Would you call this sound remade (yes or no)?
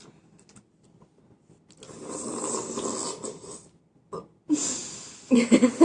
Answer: no